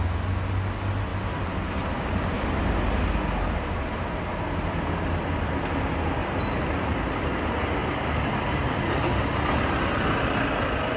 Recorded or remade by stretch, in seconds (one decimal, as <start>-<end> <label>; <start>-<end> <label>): 0.0-1.1 recorded; 1.1-2.8 remade; 2.8-6.2 recorded; 6.2-6.9 remade; 6.9-7.8 recorded; 7.8-8.8 remade; 8.8-11.0 recorded